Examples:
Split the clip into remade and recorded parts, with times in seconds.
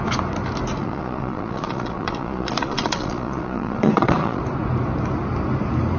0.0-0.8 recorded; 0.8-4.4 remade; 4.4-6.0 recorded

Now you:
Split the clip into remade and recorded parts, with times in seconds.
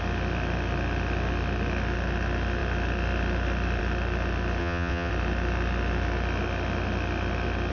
0.0-4.6 recorded; 4.6-5.1 remade; 5.1-7.7 recorded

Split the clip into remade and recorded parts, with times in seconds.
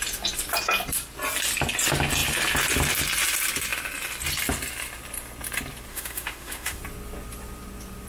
0.0-5.9 recorded; 5.9-6.8 remade; 6.8-8.1 recorded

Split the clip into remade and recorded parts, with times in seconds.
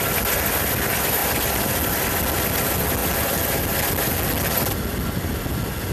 0.0-5.9 recorded